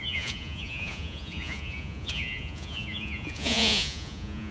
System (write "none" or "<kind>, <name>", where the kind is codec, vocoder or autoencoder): vocoder, Vocos